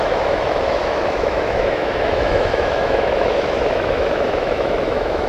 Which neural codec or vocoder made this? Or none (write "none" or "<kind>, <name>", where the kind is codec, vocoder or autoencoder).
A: autoencoder, DAC-VAE